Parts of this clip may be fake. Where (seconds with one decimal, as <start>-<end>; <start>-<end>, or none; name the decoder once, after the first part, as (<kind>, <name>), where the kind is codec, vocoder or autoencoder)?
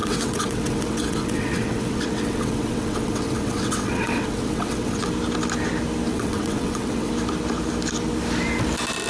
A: 0.0-5.0 (vocoder, WaveNeXt); 6.1-7.1